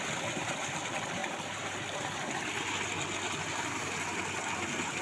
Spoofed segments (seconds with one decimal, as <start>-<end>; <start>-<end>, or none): none